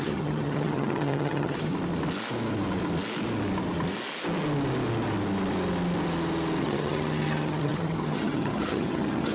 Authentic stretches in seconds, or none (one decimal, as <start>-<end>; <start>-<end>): 1.7-6.6

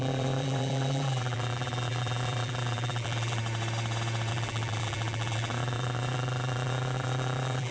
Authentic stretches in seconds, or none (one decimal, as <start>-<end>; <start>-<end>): 3.4-4.3

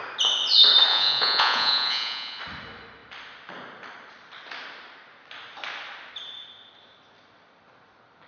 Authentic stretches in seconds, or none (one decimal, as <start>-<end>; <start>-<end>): 0.0-0.9; 2.4-8.3